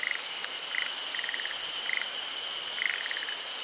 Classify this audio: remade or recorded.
recorded